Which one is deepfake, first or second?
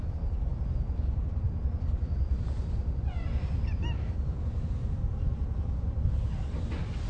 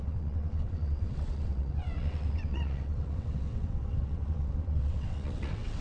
second